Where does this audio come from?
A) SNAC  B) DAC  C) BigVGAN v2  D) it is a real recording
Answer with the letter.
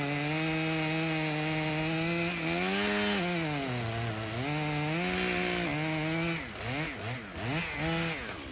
D